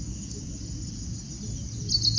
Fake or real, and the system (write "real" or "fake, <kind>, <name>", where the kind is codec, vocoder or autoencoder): real